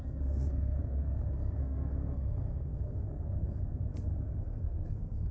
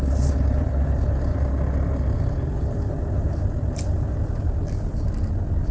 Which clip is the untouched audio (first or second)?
second